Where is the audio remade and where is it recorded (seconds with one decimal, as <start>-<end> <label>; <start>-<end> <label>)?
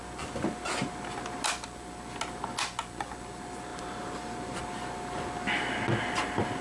0.0-6.6 recorded